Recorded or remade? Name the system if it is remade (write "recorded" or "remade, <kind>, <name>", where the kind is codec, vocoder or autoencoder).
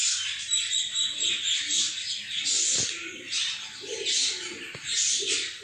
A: recorded